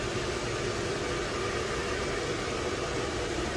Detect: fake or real real